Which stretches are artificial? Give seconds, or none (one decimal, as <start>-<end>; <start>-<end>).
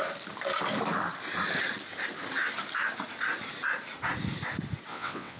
4.9-5.4